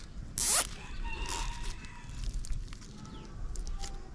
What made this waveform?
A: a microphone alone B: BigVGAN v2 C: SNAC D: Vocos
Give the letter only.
A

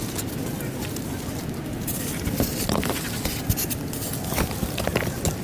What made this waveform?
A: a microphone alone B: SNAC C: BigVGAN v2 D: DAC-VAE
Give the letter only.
A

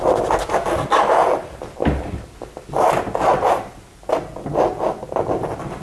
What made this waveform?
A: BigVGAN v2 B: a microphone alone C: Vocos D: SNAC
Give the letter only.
B